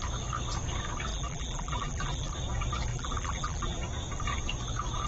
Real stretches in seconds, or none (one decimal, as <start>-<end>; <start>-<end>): 0.0-1.1; 2.3-2.9; 3.8-5.1